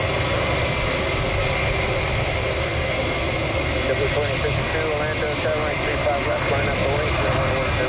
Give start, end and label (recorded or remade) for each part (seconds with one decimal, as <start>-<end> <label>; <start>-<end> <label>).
0.0-7.9 recorded